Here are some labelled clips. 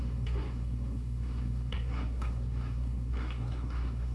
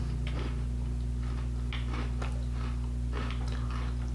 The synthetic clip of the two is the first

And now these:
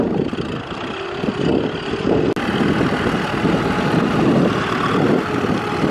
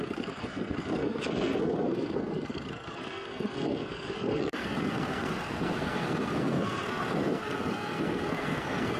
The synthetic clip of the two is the second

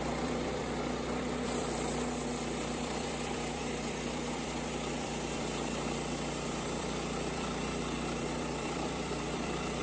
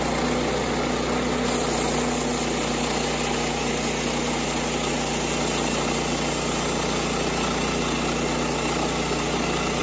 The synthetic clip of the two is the first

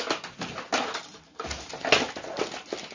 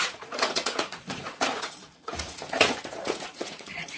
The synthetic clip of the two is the second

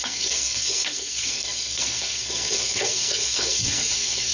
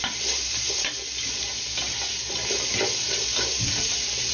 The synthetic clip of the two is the first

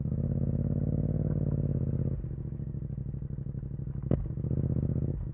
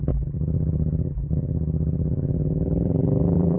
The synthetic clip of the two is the second